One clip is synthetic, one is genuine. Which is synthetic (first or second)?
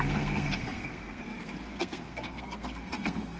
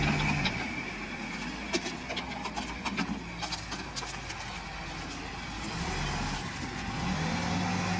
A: first